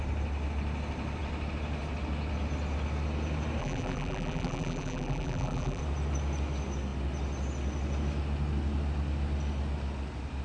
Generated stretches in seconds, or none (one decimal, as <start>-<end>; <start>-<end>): 3.6-5.8